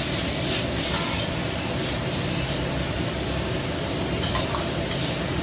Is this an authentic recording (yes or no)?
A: yes